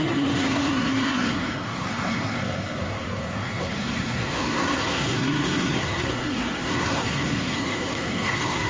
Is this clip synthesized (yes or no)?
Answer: yes